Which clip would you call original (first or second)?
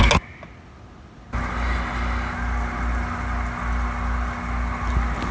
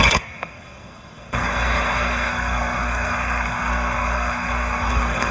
first